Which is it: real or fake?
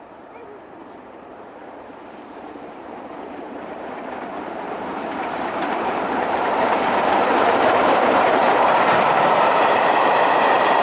fake